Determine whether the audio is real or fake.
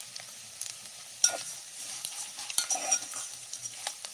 fake